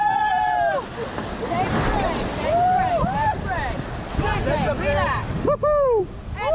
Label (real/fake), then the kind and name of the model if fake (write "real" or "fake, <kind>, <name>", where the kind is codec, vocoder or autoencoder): real